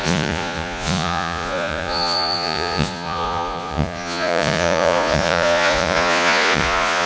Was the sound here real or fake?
fake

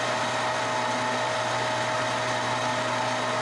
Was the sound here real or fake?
real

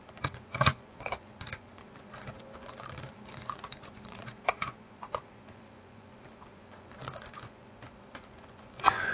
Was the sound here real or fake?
fake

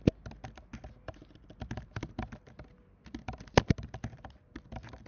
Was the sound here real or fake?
real